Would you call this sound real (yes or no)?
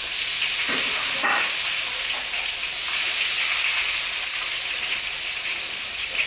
yes